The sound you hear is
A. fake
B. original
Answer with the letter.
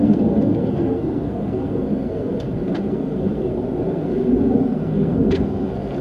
A